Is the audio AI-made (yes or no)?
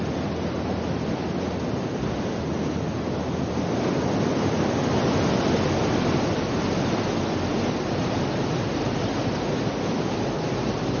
no